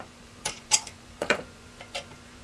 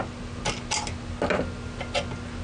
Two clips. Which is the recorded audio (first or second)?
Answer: second